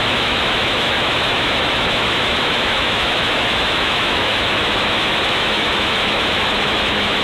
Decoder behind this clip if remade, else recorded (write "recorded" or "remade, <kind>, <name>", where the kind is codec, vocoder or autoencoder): remade, autoencoder, DAC-VAE